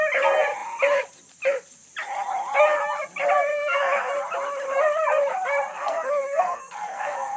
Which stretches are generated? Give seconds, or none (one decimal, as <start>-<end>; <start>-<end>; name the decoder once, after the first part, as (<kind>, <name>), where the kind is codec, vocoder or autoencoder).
3.5-4.1 (codec, SNAC); 5.7-7.4